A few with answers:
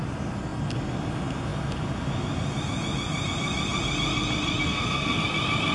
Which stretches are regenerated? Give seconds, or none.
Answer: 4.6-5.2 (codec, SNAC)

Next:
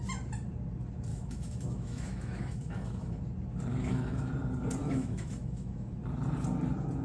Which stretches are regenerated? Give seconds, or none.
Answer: 1.1-3.2 (autoencoder, DAC-VAE); 3.7-4.3; 4.8-6.0

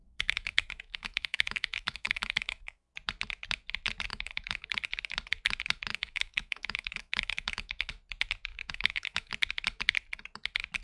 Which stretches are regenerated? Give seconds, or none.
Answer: 0.0-2.9 (autoencoder, DAC-VAE); 4.1-4.7; 5.9-7.9; 8.5-9.3